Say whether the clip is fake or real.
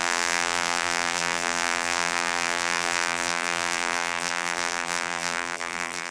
fake